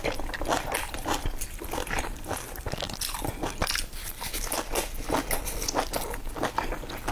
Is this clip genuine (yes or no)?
yes